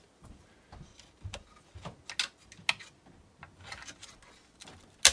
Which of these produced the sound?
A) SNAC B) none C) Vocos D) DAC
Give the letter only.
B